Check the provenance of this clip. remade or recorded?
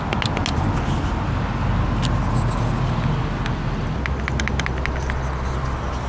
recorded